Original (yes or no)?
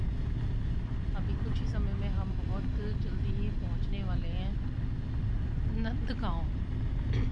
yes